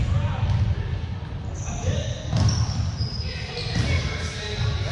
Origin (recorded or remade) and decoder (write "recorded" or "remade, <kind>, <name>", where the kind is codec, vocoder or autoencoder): recorded